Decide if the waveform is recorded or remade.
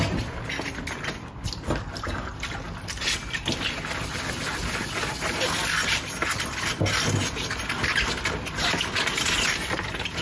recorded